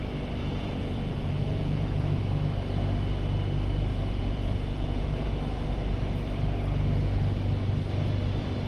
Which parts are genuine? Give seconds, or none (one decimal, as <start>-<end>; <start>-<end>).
0.0-0.4; 2.2-3.9; 5.4-8.7